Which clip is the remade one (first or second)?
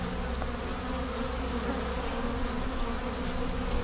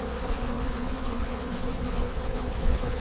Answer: second